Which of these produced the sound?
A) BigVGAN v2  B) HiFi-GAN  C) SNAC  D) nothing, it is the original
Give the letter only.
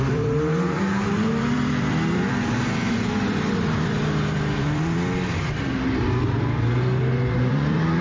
A